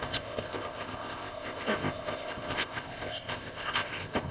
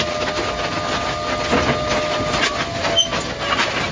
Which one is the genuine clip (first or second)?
second